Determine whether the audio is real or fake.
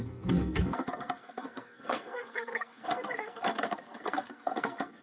fake